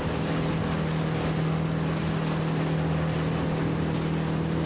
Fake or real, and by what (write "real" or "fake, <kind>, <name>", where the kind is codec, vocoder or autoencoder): real